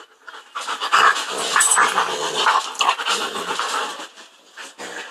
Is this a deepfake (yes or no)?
no